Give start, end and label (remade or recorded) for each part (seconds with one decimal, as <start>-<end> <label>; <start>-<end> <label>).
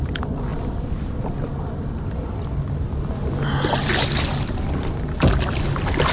0.0-6.1 recorded